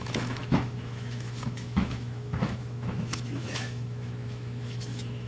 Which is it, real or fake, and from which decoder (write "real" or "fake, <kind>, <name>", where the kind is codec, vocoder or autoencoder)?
fake, autoencoder, DAC-VAE